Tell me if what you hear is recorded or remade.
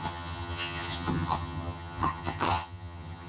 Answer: remade